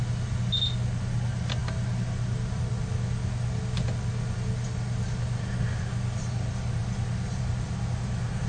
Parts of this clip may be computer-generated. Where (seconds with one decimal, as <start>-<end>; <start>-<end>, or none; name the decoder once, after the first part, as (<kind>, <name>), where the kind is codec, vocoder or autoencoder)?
none